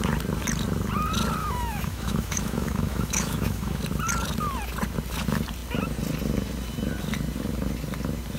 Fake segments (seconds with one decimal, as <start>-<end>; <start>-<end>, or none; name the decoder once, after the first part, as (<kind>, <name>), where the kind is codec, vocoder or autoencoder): 1.4-3.8 (autoencoder, DAC-VAE)